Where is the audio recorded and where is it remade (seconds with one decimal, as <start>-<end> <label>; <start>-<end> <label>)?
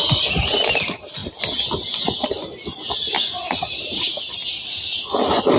0.0-5.6 recorded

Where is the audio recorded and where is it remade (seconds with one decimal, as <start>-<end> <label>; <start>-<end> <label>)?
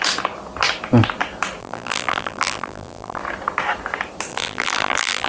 0.0-1.6 recorded; 1.6-3.2 remade; 3.2-4.3 recorded; 4.3-5.3 remade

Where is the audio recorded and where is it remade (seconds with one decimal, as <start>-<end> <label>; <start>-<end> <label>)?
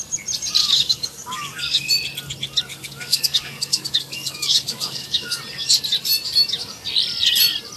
0.0-0.6 recorded; 0.6-1.9 remade; 1.9-2.7 recorded; 2.7-5.4 remade; 5.4-7.8 recorded